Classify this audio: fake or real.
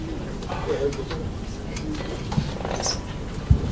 real